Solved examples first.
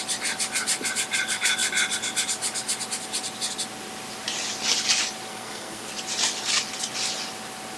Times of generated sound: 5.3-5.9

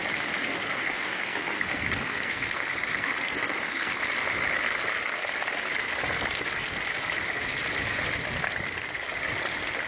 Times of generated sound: 0.4-3.9

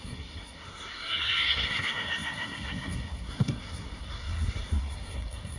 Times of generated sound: 0.0-5.6

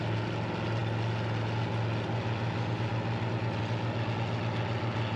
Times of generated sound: none

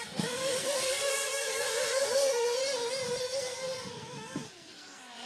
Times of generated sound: 0.0-2.6; 3.2-5.3

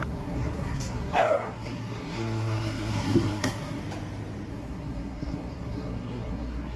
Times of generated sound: 0.0-3.8; 4.5-6.8

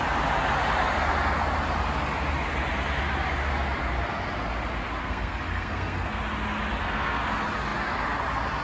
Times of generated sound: 5.0-6.2; 6.8-7.3

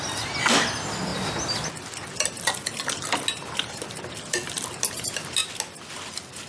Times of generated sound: none